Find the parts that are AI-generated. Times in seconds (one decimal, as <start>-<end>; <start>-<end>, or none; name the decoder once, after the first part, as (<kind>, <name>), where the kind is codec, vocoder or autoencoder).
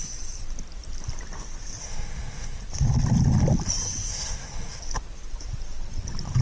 1.8-2.6 (codec, SNAC); 4.1-4.8